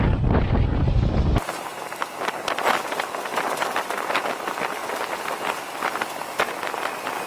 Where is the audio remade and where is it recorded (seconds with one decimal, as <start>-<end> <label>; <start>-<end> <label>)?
0.0-7.3 recorded